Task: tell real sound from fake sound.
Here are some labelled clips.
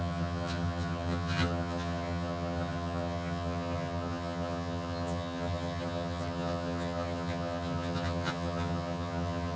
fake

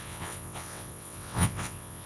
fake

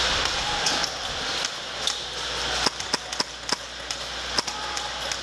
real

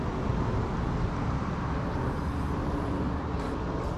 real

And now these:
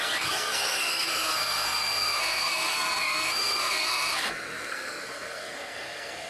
fake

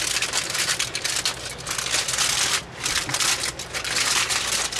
real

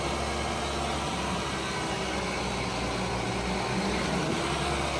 real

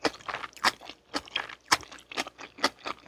real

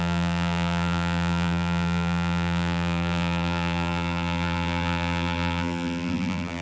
fake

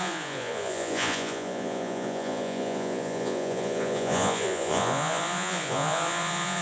fake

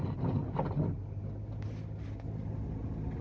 real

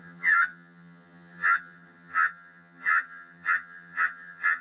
fake